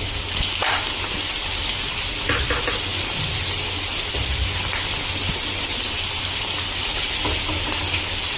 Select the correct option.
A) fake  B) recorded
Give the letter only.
B